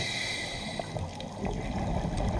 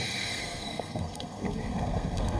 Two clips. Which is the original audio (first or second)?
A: first